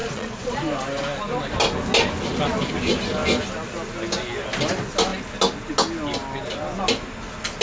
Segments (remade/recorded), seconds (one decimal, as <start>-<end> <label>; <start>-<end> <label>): 0.0-0.6 remade; 0.6-7.6 recorded